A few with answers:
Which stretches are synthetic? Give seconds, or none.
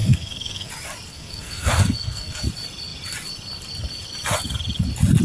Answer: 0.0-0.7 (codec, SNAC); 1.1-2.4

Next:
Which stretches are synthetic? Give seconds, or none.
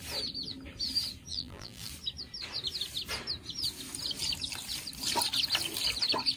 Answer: 1.3-1.9 (vocoder, BigVGAN v2)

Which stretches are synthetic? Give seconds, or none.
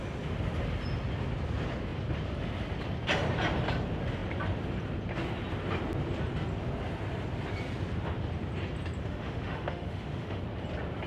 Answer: 9.0-10.4 (autoencoder, DAC-VAE)